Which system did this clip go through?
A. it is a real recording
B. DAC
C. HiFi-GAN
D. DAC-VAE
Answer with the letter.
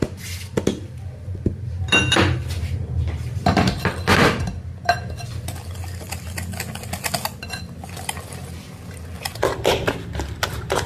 A